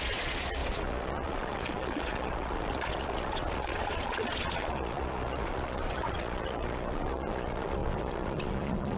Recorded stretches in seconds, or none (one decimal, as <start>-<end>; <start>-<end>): none